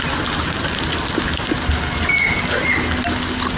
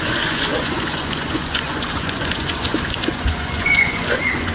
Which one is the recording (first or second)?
first